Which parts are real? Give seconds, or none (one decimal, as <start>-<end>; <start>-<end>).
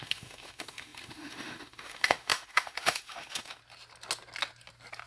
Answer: 3.6-5.1